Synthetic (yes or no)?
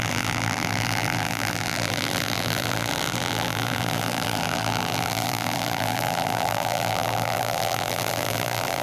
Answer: yes